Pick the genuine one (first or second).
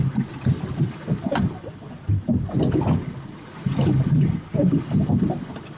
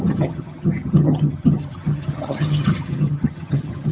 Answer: first